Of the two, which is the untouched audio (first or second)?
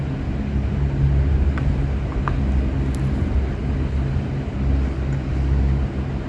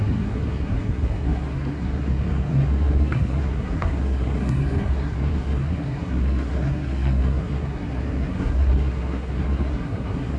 first